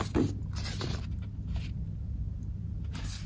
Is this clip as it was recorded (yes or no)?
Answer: yes